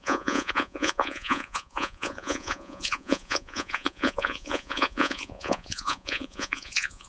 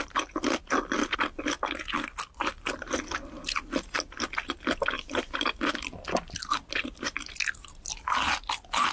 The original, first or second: second